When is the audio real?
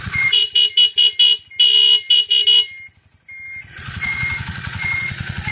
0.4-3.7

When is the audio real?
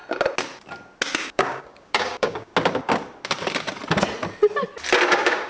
0.0-1.2; 2.5-5.1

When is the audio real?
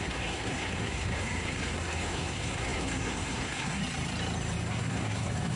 3.8-4.7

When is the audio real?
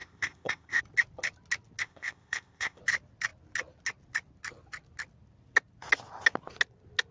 0.8-1.8; 2.8-7.1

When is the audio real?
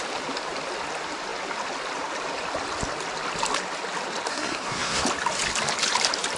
0.0-4.3; 5.0-6.4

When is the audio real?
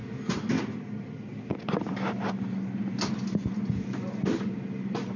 0.0-5.2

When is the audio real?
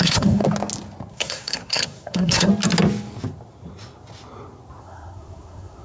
0.4-1.1; 2.5-4.8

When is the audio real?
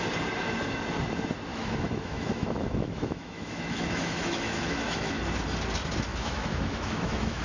0.0-1.5; 5.2-6.1